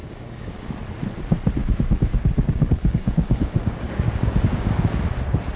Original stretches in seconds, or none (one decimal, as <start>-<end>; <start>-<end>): 0.7-1.6; 5.0-5.6